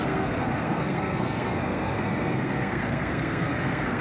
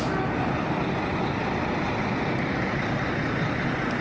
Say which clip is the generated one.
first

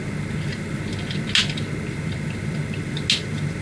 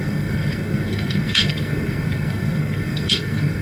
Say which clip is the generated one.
second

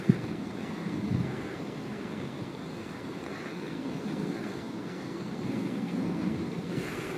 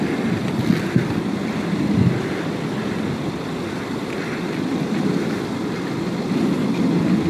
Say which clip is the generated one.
first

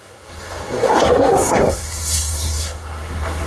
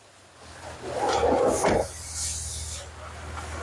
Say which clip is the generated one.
first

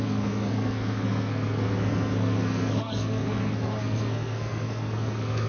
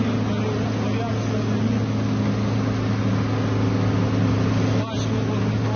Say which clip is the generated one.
first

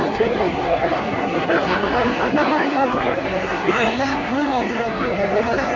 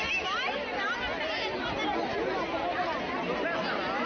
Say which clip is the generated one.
first